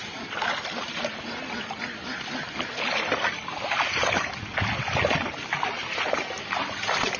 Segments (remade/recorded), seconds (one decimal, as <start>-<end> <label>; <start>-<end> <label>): 0.0-7.2 recorded